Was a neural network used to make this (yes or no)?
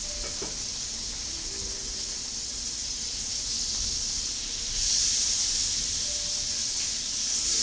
no